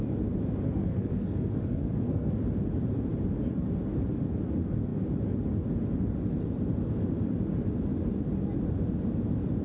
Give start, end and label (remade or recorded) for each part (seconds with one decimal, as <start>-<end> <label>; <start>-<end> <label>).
0.0-0.8 recorded; 0.8-2.3 remade; 2.3-9.6 recorded